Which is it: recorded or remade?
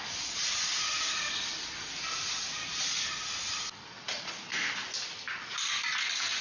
recorded